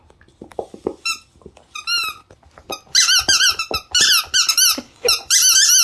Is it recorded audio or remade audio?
recorded